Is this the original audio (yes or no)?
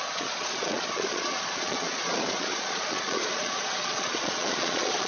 no